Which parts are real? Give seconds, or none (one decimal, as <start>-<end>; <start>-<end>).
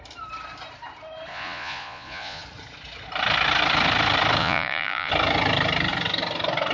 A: 0.0-1.3; 2.4-4.4; 5.1-6.7